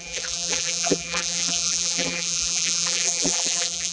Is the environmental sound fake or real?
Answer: fake